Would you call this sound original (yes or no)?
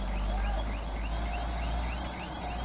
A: yes